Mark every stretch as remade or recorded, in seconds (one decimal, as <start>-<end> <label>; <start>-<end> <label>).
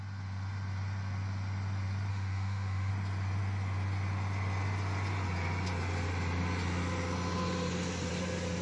0.0-2.1 recorded; 2.1-2.9 remade; 2.9-8.6 recorded